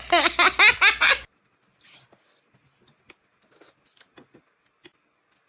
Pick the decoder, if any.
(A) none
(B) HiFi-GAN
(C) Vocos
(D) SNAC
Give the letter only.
A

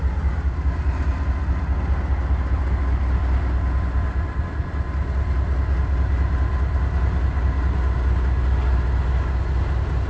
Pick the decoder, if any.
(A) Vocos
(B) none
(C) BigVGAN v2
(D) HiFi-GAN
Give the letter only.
B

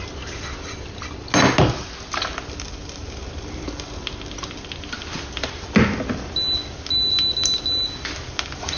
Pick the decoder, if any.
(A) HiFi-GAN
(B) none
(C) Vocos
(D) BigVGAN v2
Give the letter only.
B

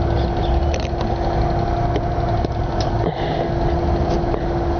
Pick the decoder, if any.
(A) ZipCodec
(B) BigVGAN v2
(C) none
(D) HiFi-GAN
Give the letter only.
C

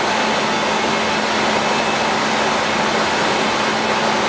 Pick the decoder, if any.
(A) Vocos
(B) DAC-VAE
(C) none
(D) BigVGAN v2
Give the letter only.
C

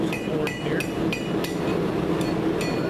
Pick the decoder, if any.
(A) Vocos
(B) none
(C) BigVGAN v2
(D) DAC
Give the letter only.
B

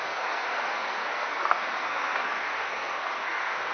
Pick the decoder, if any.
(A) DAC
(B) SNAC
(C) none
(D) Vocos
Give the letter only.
B